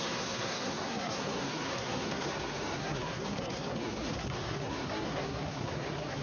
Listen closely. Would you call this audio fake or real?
fake